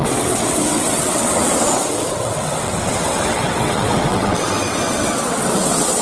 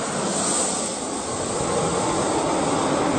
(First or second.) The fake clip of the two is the first